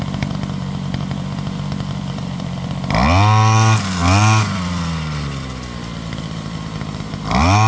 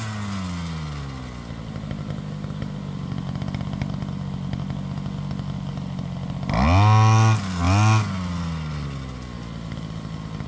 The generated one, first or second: first